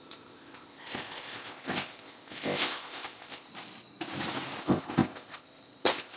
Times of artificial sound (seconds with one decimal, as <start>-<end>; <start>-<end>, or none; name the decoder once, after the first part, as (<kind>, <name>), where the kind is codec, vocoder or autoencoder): 0.0-3.5 (codec, ZipCodec); 4.6-6.2